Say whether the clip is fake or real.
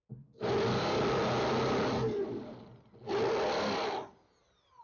real